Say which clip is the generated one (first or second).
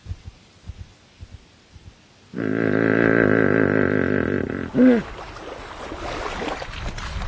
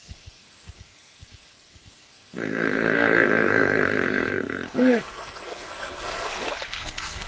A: second